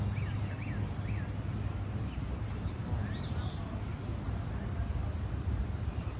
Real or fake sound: real